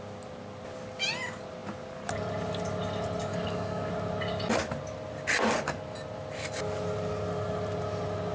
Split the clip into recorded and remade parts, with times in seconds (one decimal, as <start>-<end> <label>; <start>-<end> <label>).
0.0-3.3 recorded; 3.3-3.9 remade; 3.9-8.3 recorded